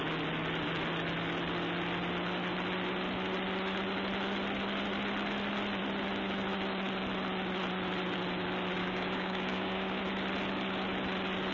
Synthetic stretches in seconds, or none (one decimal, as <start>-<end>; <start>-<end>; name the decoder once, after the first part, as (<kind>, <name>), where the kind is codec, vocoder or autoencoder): 8.8-10.0 (codec, DAC)